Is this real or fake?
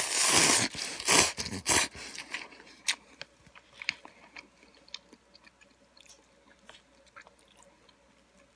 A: real